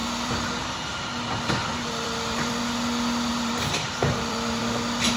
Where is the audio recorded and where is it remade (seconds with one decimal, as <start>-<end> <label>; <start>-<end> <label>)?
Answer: 0.0-0.6 remade; 0.6-1.6 recorded; 1.6-2.6 remade; 2.6-3.3 recorded; 3.3-4.6 remade; 4.6-5.2 recorded